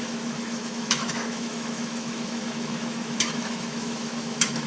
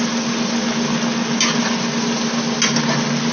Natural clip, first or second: second